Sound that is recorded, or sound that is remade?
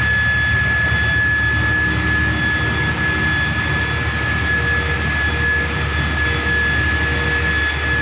recorded